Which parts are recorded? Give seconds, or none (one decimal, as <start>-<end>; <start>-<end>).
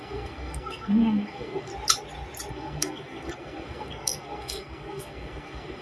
1.7-2.5